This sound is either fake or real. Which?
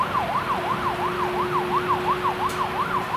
real